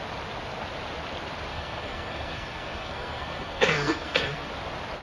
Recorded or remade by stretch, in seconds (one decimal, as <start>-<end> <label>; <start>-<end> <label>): 0.0-1.5 recorded; 1.5-4.5 remade; 4.5-5.0 recorded